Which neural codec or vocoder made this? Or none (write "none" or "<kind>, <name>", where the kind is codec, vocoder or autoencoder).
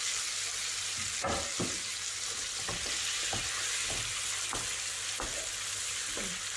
none